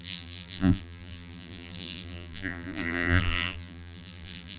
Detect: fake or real fake